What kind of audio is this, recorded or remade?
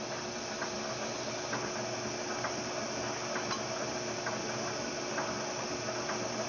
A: recorded